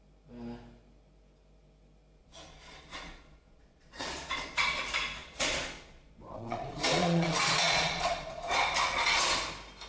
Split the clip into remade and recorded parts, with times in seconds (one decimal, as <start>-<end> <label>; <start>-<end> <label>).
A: 0.0-2.2 recorded; 2.2-4.8 remade; 4.8-5.2 recorded; 5.2-9.4 remade; 9.4-9.9 recorded